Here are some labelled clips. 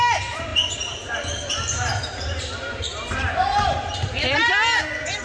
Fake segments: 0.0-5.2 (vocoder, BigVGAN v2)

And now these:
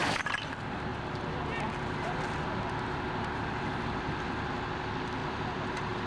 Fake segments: 5.2-6.1 (vocoder, BigVGAN v2)

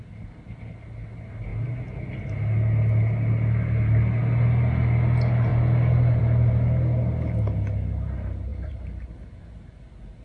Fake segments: 8.5-9.4 (vocoder, BigVGAN v2)